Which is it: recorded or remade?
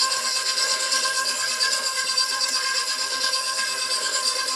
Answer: remade